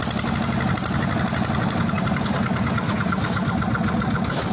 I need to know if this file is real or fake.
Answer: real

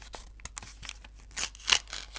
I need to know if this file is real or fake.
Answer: real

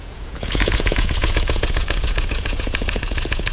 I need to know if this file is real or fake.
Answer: fake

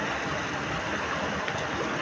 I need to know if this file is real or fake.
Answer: real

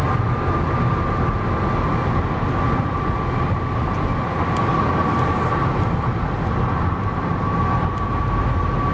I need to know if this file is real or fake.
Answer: real